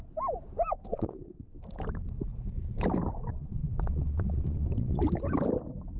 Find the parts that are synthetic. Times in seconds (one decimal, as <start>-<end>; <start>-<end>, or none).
0.9-1.6; 3.3-5.0